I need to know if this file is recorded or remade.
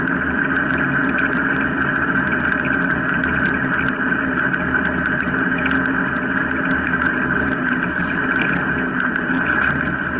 recorded